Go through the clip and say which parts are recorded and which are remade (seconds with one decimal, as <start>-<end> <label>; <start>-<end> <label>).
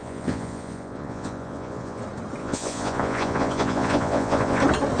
0.0-2.0 remade; 2.0-2.4 recorded; 2.4-4.6 remade; 4.6-5.0 recorded